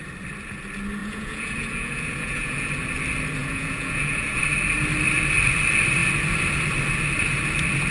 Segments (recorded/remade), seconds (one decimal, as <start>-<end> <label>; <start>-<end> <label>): 0.0-1.0 recorded; 1.0-2.7 remade; 2.7-3.4 recorded; 3.4-4.4 remade; 4.4-7.9 recorded